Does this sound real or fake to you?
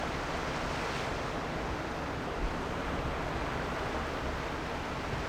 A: real